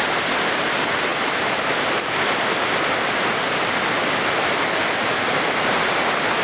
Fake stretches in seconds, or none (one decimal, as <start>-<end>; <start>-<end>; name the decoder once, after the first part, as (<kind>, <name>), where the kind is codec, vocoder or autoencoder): none